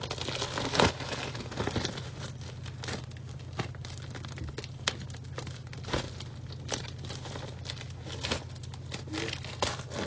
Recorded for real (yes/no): yes